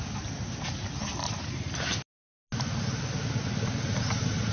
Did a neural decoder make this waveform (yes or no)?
no